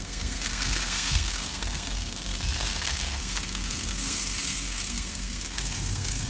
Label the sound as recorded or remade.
remade